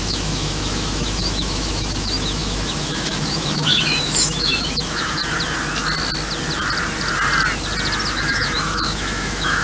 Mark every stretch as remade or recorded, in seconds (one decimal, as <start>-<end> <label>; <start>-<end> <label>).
0.0-5.2 remade; 5.2-8.1 recorded; 8.1-9.6 remade